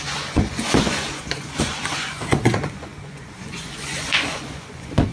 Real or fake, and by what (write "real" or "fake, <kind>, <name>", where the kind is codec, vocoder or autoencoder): fake, vocoder, Vocos